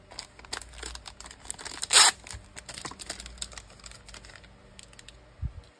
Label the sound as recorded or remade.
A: recorded